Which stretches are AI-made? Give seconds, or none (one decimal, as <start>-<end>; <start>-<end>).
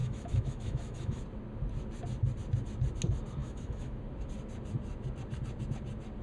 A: 0.0-1.2; 3.4-4.0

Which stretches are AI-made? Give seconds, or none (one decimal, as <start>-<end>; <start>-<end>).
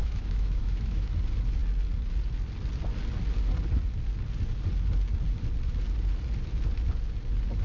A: 0.0-1.1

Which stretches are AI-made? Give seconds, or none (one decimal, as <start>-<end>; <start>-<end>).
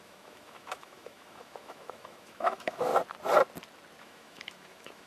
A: 0.0-2.9; 4.0-5.1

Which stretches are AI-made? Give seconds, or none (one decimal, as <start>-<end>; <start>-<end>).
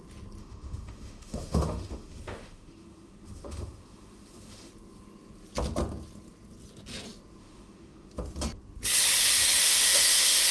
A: 0.4-4.7; 7.4-8.1; 9.6-10.5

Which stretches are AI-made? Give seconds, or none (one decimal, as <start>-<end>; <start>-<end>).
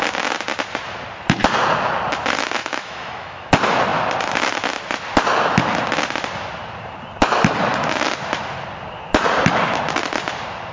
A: 2.6-3.5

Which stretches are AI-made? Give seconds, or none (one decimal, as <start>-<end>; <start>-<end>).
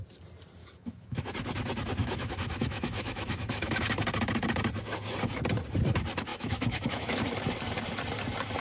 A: 0.6-1.2; 2.0-3.9; 6.3-7.2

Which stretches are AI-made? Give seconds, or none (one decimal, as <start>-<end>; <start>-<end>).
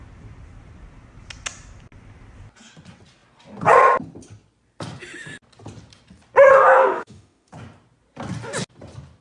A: 6.8-7.5